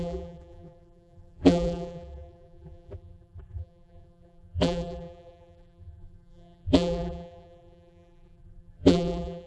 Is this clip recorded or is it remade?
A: remade